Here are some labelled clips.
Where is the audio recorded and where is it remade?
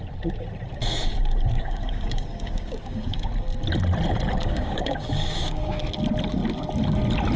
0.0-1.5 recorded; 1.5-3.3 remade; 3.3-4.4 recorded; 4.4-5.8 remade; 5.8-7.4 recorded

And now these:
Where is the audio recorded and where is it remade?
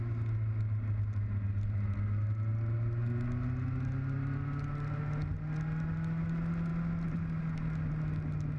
0.0-8.6 recorded